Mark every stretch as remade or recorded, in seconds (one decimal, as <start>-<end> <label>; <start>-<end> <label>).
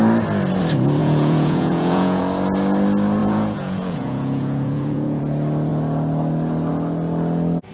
0.0-1.0 recorded; 1.0-2.2 remade; 2.2-3.2 recorded; 3.2-5.2 remade; 5.2-7.7 recorded